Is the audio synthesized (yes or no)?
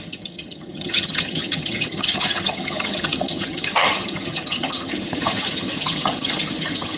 yes